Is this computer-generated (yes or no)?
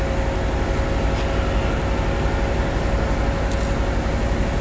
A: no